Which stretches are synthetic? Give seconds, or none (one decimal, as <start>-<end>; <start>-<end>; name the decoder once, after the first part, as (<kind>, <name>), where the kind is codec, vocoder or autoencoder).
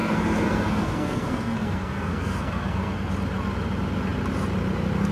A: 0.0-3.1 (codec, SNAC)